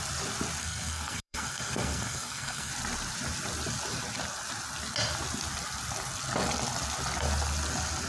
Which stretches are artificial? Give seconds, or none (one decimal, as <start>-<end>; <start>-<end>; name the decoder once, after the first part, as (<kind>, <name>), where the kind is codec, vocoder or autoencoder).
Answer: 0.6-2.7 (codec, SNAC)